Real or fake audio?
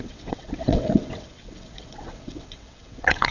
fake